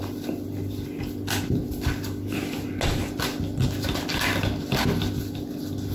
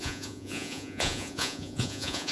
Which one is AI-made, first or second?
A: second